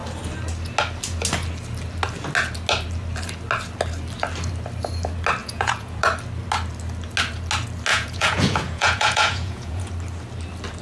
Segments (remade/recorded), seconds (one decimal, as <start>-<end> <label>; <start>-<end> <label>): 0.0-5.4 recorded; 5.4-6.0 remade; 6.0-7.9 recorded; 7.9-9.9 remade; 9.9-10.8 recorded